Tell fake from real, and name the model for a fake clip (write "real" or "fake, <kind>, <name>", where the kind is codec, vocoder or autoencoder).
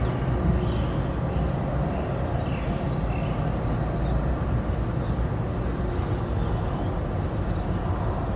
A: real